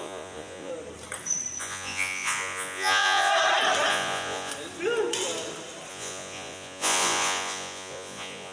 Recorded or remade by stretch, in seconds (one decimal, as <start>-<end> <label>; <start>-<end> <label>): 0.0-0.7 remade; 0.7-1.6 recorded; 1.6-3.3 remade; 3.3-3.9 recorded; 3.9-4.5 remade; 4.5-5.9 recorded; 5.9-8.5 remade